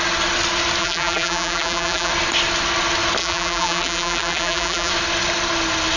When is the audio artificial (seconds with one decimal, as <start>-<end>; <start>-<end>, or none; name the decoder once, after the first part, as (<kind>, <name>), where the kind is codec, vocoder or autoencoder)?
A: 0.8-2.1 (vocoder, BigVGAN v2); 3.2-4.9